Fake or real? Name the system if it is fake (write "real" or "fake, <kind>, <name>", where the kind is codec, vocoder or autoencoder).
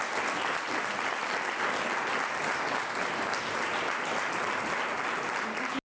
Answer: real